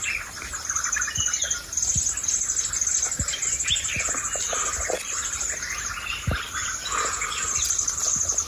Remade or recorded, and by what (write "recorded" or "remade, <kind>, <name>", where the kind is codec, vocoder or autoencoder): recorded